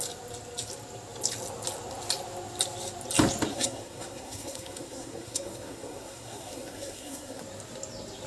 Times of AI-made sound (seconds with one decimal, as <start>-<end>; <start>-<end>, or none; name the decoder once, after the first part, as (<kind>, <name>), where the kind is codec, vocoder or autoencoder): 3.5-7.4 (codec, SNAC)